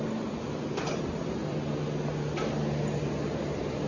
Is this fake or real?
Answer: real